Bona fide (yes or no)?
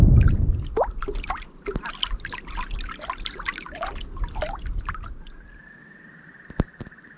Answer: yes